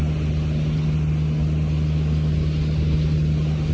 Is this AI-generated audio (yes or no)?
no